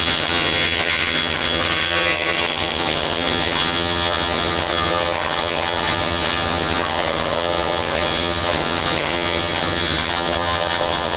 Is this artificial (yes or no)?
yes